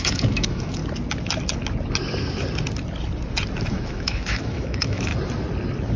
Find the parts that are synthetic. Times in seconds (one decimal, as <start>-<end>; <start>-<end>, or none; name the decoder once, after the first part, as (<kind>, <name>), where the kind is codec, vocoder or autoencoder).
0.0-0.8 (autoencoder, DAC-VAE); 3.7-5.1